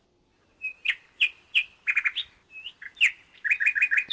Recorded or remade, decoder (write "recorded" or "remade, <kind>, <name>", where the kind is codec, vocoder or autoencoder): recorded